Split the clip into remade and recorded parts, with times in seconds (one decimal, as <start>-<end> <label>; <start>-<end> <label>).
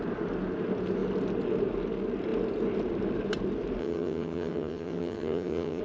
0.0-3.8 recorded; 3.8-5.8 remade